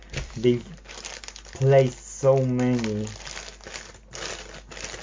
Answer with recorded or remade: recorded